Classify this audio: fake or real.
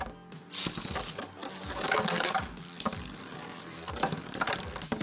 real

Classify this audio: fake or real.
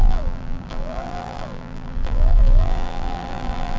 fake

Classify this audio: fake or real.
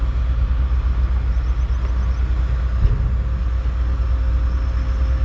real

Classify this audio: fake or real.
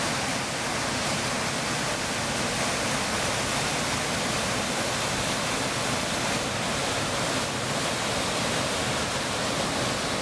real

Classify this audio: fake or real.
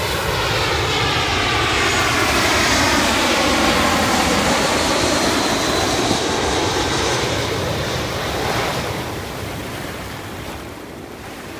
fake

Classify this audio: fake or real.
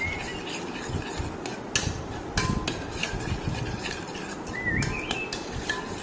real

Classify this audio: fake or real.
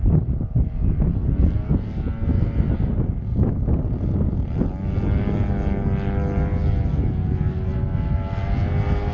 real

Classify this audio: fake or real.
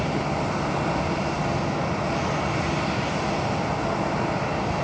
real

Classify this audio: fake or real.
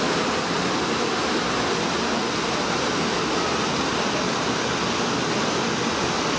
real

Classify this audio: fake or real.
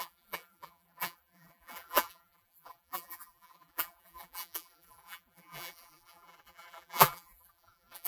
fake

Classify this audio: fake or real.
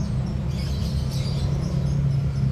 real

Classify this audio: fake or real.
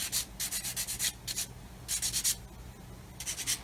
real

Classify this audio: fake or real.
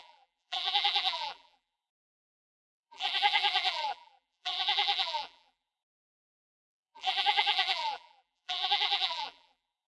fake